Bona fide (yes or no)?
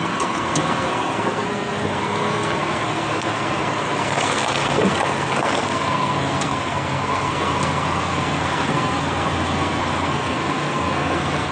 no